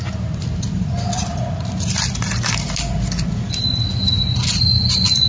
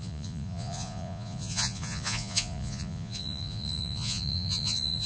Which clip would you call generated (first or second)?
second